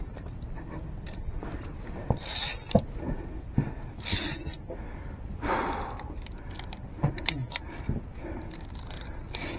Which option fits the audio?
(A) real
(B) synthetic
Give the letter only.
A